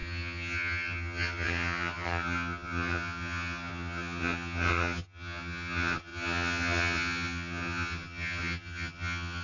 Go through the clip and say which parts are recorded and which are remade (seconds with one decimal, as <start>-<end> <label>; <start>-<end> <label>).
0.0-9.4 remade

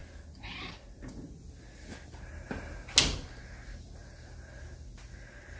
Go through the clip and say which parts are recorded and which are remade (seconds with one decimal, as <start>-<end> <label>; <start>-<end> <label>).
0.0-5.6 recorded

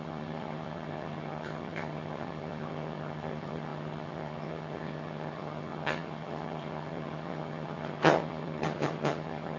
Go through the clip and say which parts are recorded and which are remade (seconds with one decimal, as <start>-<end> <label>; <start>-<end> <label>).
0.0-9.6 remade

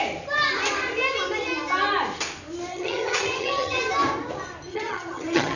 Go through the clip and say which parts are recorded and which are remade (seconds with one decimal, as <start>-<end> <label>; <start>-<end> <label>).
0.0-2.7 recorded; 2.7-3.8 remade; 3.8-4.7 recorded; 4.7-5.6 remade

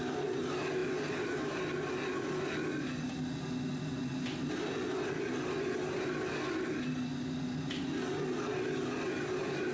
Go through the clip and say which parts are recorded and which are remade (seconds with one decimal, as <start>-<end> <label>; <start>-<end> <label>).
0.0-9.7 recorded

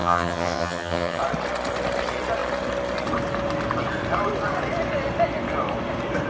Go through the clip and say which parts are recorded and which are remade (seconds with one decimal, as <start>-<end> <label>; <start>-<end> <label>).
0.0-1.2 remade; 1.2-6.3 recorded